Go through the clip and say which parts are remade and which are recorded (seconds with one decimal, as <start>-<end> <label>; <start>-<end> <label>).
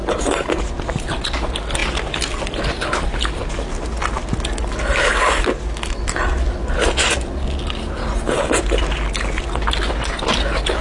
0.0-0.6 remade; 0.6-10.8 recorded